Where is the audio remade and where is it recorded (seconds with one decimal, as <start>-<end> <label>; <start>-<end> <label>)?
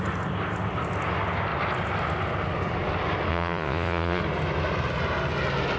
0.0-3.3 recorded; 3.3-4.2 remade; 4.2-5.8 recorded